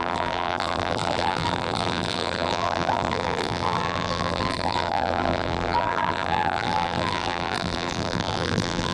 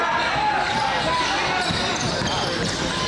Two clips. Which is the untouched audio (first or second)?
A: second